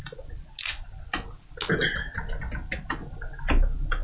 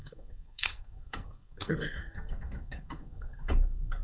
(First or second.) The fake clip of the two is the second